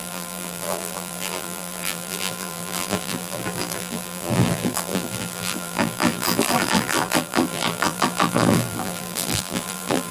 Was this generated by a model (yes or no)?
yes